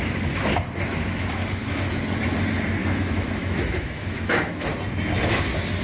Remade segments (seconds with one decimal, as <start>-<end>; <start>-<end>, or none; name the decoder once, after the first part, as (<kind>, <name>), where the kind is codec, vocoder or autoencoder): 0.9-1.9 (autoencoder, DAC-VAE); 2.8-4.7